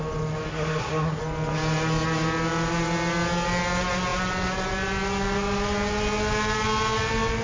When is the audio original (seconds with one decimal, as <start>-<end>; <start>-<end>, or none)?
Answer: 0.0-0.5; 1.2-7.4